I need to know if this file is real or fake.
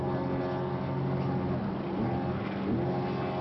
real